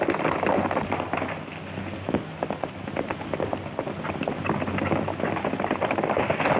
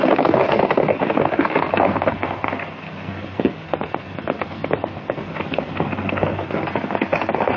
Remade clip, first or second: second